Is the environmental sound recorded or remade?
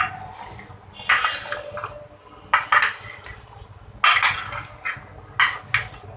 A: recorded